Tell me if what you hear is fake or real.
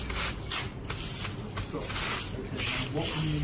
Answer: real